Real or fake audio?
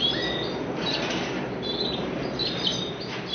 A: fake